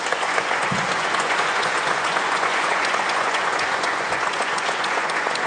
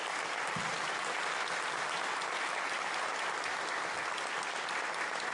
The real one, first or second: second